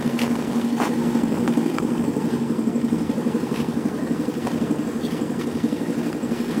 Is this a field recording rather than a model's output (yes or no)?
no